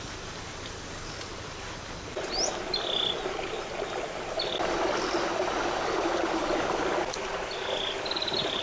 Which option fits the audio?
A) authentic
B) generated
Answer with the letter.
A